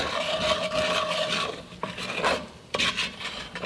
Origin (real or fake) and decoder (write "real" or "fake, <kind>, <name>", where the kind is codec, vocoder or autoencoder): fake, vocoder, BigVGAN v2